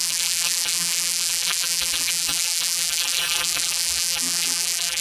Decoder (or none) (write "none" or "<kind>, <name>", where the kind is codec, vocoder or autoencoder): vocoder, BigVGAN v2